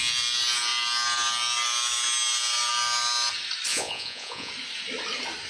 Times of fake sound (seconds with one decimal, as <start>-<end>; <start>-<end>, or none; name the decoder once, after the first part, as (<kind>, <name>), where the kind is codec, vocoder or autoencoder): 3.7-4.5 (vocoder, Vocos)